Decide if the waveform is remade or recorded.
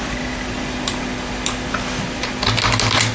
recorded